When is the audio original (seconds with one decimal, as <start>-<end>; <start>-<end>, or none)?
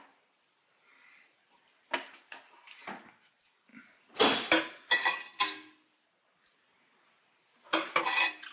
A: 0.0-8.5